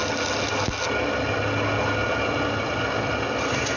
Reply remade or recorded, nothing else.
recorded